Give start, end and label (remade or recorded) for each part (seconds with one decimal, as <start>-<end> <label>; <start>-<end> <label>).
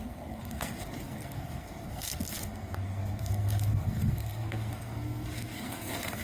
0.0-6.2 remade